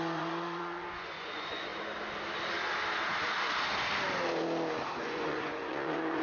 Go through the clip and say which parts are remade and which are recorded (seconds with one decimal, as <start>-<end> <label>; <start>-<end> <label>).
0.0-1.7 remade; 1.7-5.0 recorded; 5.0-6.2 remade